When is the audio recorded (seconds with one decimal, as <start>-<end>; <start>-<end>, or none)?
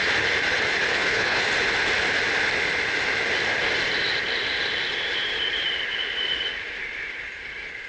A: 0.0-0.9; 1.4-7.9